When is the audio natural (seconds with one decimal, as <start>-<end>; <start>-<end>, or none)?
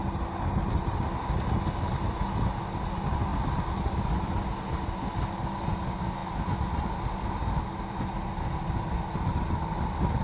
0.0-10.2